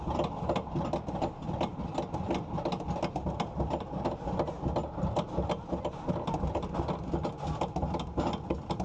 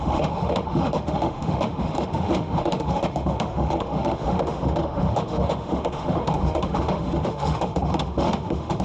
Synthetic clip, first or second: second